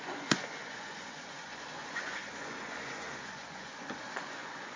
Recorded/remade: remade